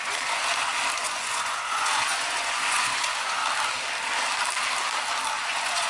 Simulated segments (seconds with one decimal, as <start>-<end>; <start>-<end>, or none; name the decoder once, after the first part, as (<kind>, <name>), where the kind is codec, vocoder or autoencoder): 0.0-0.4 (vocoder, Vocos); 1.0-3.4; 5.4-5.9